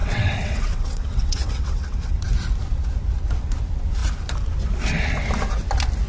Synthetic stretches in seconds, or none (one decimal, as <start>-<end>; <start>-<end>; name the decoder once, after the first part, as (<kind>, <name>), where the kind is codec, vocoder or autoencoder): 0.0-2.2 (vocoder, WaveNeXt)